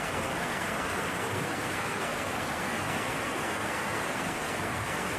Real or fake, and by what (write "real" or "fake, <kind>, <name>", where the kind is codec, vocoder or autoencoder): fake, codec, SNAC